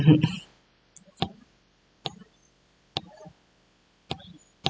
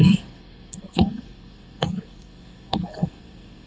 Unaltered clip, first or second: first